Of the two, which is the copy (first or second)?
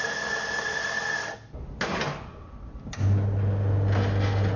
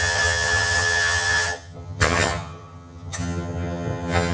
second